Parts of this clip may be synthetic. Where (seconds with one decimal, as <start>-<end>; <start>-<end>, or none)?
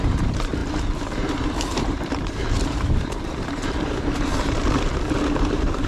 0.0-5.9